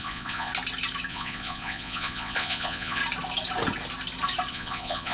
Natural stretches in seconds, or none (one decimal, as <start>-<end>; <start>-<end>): 0.5-1.1; 3.0-4.5